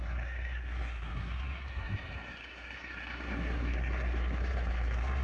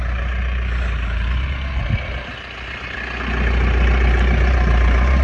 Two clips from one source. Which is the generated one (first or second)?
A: first